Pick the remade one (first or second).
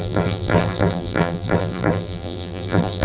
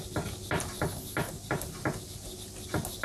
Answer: first